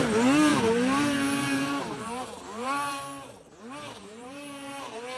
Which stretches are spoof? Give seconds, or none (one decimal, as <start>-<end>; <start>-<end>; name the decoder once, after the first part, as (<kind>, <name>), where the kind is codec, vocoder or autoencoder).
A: 0.5-3.6 (vocoder, BigVGAN v2); 4.0-5.2